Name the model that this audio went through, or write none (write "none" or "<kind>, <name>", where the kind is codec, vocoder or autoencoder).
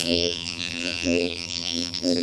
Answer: vocoder, BigVGAN v2